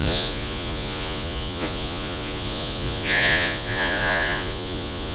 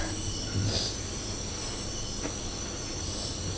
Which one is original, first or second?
second